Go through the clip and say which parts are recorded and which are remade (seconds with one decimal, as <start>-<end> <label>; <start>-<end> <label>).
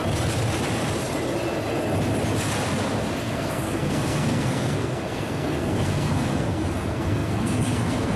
0.0-3.2 recorded; 3.2-8.2 remade